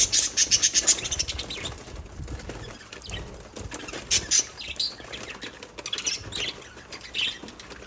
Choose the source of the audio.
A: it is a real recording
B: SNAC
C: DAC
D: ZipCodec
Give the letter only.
A